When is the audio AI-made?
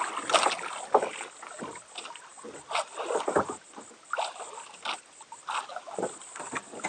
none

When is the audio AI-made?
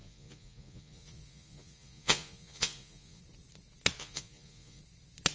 0.0-3.2 (vocoder, Vocos); 4.0-4.8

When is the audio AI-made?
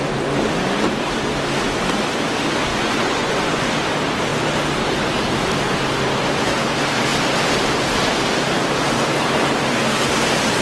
2.7-3.7 (vocoder, Vocos)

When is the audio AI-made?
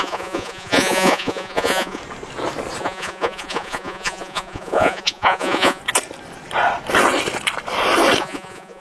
0.0-2.0 (vocoder, Vocos); 2.8-5.8; 8.2-8.8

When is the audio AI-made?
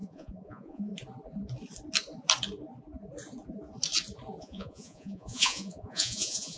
0.0-0.9 (vocoder, Vocos); 4.4-6.6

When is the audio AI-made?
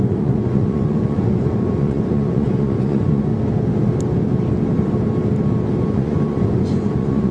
0.0-3.3 (vocoder, Vocos); 5.8-7.3